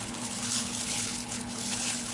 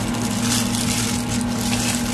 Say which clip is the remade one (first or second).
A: first